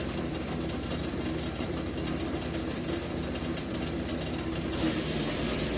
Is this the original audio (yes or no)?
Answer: no